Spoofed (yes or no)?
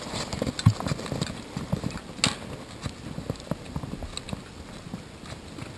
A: no